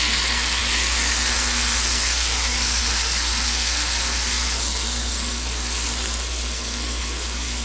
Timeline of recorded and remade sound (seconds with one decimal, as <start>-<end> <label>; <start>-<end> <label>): 0.0-7.6 remade